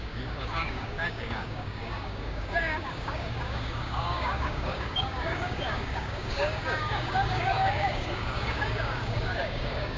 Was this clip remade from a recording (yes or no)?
yes